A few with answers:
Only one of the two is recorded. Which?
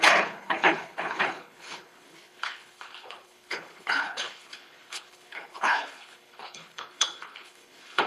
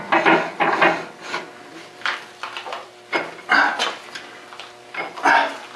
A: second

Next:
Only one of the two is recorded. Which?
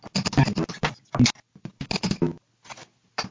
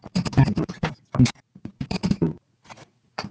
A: first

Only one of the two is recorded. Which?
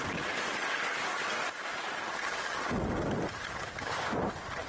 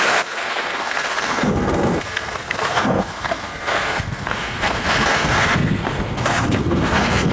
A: first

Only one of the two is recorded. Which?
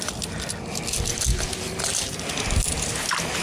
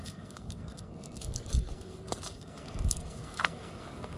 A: first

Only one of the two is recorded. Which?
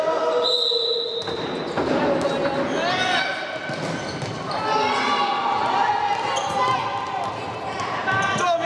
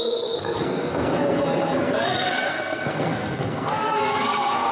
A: first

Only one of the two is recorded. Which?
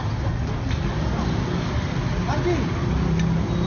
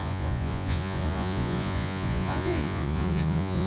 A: first